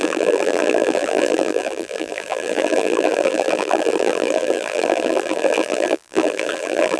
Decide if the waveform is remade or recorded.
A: remade